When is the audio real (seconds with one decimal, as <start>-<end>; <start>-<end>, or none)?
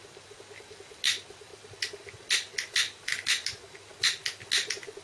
0.0-5.0